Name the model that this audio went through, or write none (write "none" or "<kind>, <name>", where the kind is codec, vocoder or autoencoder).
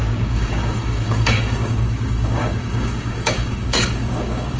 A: codec, DAC